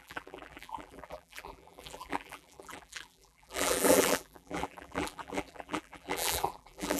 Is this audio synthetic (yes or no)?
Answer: yes